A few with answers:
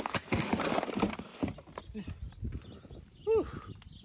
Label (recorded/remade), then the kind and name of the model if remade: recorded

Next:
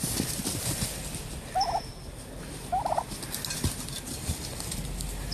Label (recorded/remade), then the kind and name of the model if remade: recorded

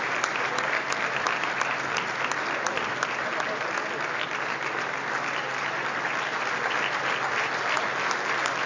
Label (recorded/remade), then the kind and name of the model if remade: recorded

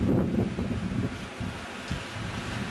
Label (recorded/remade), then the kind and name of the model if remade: recorded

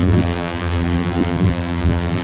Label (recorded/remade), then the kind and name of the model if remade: remade, vocoder, BigVGAN v2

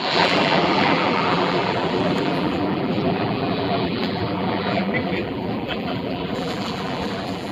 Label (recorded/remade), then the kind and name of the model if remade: remade, vocoder, BigVGAN v2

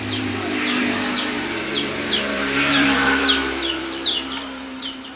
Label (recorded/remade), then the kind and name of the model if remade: remade, vocoder, BigVGAN v2